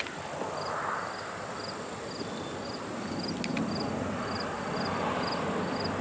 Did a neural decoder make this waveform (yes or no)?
no